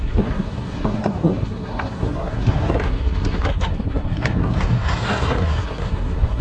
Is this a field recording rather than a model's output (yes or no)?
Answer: no